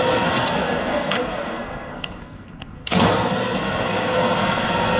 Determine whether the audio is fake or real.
fake